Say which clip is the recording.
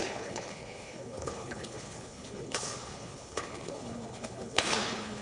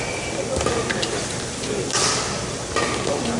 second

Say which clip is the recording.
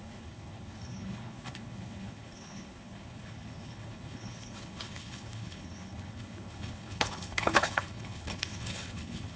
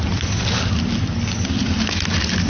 second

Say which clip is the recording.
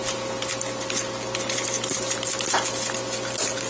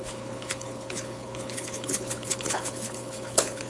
first